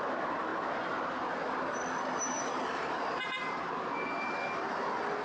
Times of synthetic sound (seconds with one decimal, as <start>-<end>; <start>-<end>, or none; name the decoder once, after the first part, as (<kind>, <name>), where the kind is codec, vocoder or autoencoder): none